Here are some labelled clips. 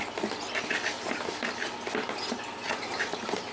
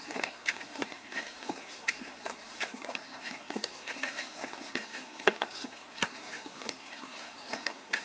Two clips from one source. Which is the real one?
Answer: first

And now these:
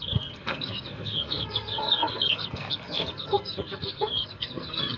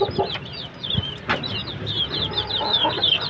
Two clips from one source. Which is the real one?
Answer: second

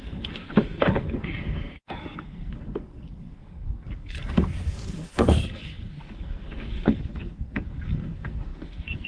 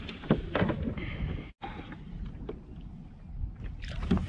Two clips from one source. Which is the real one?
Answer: second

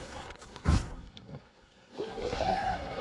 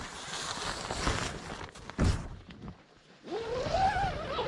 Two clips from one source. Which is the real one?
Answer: second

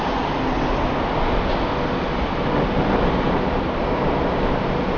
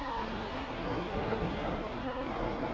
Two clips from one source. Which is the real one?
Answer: first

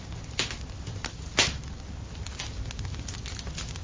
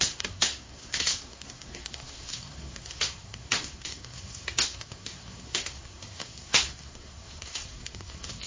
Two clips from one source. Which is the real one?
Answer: first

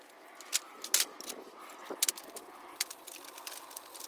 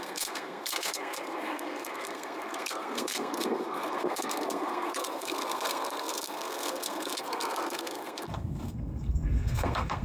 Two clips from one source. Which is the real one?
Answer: first